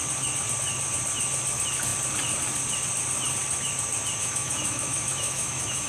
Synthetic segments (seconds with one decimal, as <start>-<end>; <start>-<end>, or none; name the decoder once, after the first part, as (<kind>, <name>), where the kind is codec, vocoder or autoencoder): 4.2-5.9 (autoencoder, DAC-VAE)